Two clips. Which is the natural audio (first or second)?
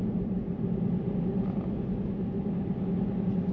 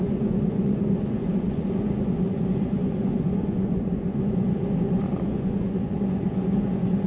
first